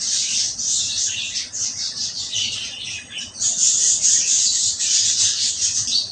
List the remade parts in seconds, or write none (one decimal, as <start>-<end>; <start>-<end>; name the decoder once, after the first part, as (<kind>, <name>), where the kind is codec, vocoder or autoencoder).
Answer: none